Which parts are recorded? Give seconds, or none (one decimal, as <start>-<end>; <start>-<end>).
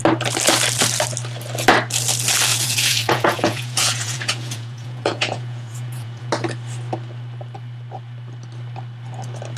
0.0-2.5; 6.3-9.6